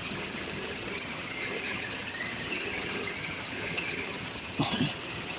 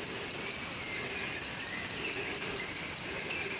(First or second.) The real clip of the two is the second